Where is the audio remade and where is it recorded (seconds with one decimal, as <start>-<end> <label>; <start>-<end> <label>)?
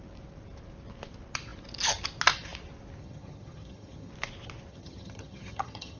0.0-3.0 recorded; 3.0-4.1 remade; 4.1-4.7 recorded; 4.7-6.0 remade